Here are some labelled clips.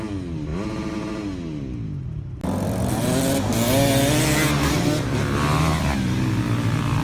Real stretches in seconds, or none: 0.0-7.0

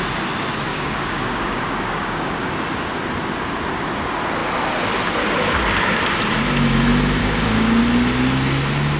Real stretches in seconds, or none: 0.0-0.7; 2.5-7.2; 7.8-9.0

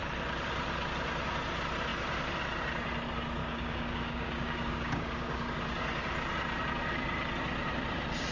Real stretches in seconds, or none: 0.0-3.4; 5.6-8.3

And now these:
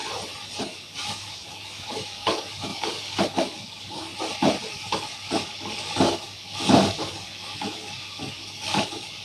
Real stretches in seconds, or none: 0.0-0.6; 4.1-4.7

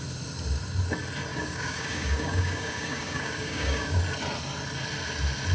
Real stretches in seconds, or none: 0.0-1.3; 4.0-5.5